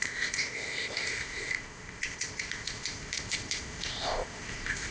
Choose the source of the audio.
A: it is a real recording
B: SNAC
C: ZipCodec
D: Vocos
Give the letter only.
C